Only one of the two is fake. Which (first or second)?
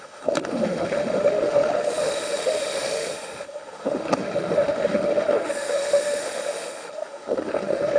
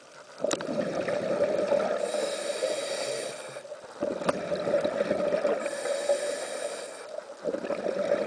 first